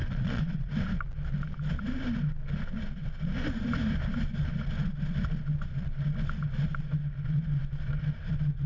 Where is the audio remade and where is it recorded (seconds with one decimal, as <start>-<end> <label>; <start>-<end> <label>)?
0.0-0.7 remade; 0.7-8.7 recorded